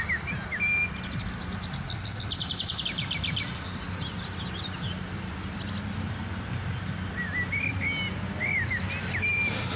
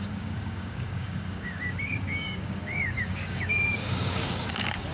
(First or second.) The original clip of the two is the first